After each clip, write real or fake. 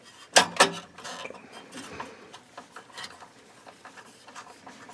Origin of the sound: real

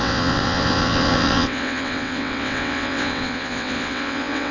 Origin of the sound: fake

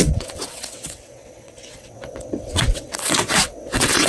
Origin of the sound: fake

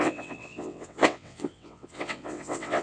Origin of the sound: fake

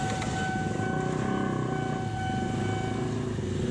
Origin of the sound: real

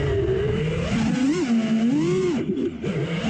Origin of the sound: real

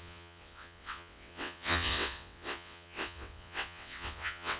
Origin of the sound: fake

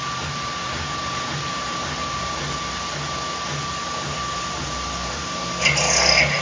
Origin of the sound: real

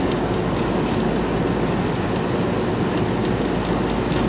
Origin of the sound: real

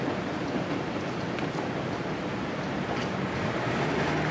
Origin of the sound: real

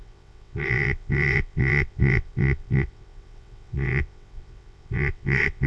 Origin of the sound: fake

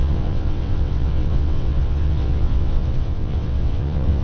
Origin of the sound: fake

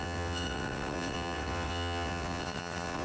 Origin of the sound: fake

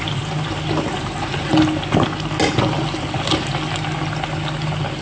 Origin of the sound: real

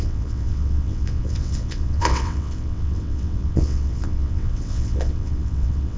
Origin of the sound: fake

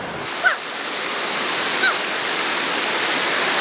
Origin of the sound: real